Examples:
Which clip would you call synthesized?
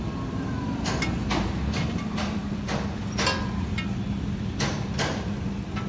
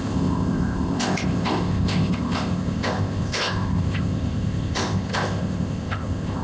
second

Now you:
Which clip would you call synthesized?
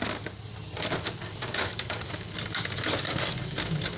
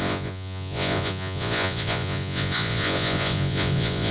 second